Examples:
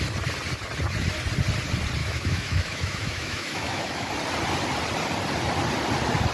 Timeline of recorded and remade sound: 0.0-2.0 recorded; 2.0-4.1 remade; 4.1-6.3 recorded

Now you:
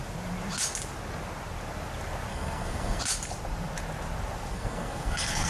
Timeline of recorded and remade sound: 0.0-2.3 recorded; 2.3-3.0 remade; 3.0-4.5 recorded; 4.5-5.5 remade

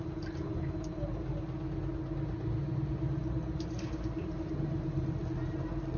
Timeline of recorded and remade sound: 0.0-6.0 recorded

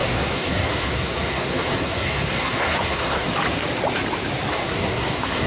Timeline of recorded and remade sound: 0.0-3.3 remade; 3.3-4.5 recorded; 4.5-5.5 remade

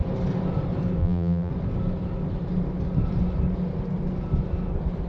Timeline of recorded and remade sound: 0.0-1.0 recorded; 1.0-1.5 remade; 1.5-5.1 recorded